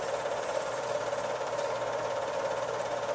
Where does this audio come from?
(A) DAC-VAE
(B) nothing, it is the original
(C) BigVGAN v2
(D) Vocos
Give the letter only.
C